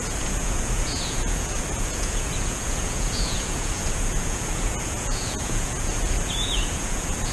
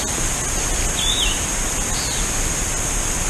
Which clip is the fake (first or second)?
first